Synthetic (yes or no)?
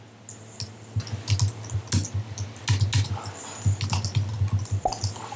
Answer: no